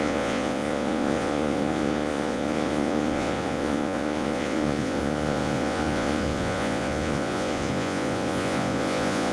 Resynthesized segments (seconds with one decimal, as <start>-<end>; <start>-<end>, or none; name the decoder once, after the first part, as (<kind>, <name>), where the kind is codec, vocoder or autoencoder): 0.0-9.3 (vocoder, Vocos)